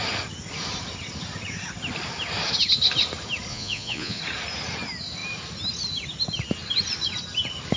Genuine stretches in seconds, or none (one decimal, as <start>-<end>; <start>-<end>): 0.0-3.5; 4.2-7.8